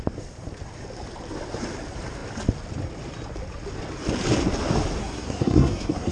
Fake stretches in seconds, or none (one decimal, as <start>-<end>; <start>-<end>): 5.0-6.1